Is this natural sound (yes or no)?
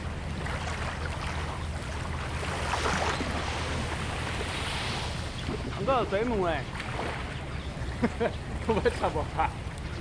yes